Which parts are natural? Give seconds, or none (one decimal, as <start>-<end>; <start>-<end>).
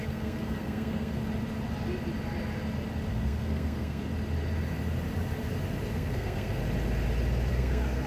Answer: 1.2-3.1; 4.1-5.9; 6.6-7.5